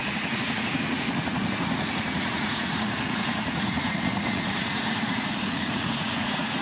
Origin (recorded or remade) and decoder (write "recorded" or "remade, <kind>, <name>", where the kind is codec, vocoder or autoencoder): remade, vocoder, Vocos